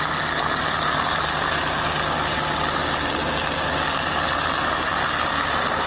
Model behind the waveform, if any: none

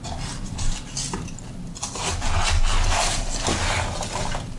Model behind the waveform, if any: none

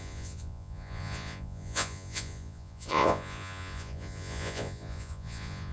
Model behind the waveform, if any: vocoder, Vocos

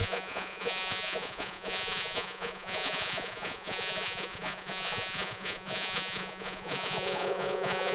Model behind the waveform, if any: vocoder, Vocos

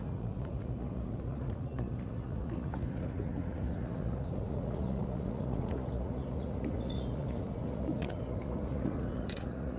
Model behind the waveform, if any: vocoder, Vocos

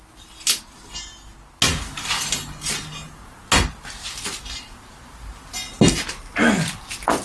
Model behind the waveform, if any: none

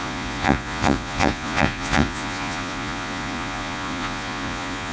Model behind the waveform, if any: vocoder, Vocos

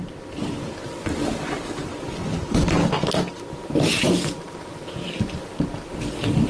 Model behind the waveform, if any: none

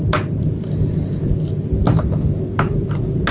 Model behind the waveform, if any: none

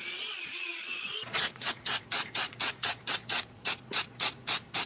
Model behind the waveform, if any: vocoder, Vocos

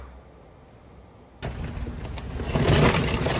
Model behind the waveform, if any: none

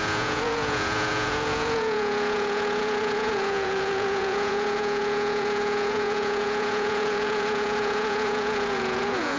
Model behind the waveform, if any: vocoder, Vocos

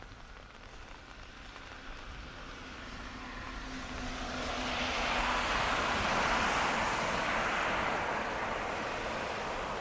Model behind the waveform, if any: none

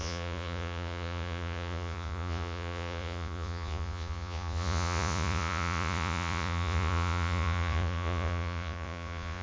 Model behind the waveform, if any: vocoder, Vocos